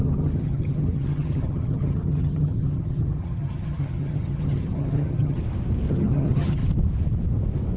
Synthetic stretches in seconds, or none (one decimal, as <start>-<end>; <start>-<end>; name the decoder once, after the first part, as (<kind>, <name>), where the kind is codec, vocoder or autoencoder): 0.0-5.4 (vocoder, HiFi-GAN); 5.9-6.6

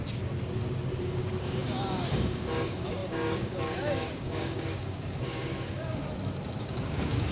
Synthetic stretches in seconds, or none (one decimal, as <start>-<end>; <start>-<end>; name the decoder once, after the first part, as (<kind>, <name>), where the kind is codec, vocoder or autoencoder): 1.0-6.0 (codec, DAC); 6.6-7.3

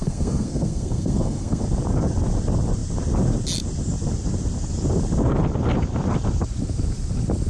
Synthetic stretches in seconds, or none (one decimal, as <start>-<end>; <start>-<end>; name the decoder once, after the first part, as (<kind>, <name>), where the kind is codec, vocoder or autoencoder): 0.0-1.6 (codec, SNAC)

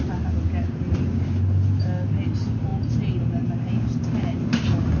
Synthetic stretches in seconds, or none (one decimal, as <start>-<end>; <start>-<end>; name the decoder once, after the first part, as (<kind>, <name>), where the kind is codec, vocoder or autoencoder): none

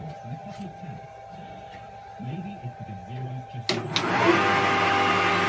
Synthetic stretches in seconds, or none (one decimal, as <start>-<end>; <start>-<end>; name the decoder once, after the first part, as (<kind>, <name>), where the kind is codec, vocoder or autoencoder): 0.0-3.0 (vocoder, BigVGAN v2)

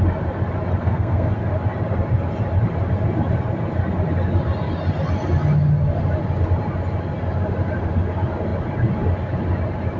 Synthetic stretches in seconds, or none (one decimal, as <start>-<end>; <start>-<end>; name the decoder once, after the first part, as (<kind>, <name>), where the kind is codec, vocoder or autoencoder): 0.8-1.3 (codec, SNAC)

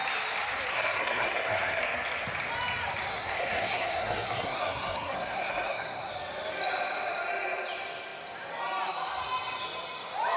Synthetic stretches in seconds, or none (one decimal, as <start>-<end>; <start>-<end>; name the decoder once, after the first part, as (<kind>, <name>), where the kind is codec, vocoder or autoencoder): 0.7-1.8 (codec, SNAC); 3.1-6.1